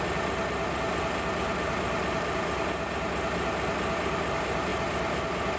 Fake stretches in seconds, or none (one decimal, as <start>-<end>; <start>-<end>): none